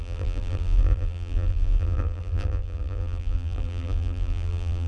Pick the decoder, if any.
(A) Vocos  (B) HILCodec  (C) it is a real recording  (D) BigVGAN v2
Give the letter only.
D